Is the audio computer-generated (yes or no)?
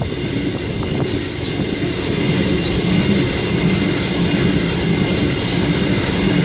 no